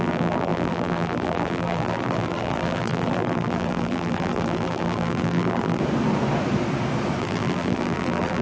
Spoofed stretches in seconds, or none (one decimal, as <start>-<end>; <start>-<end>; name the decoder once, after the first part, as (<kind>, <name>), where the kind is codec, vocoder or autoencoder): 0.0-5.8 (vocoder, BigVGAN v2); 7.2-8.4